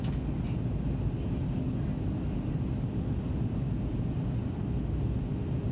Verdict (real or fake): real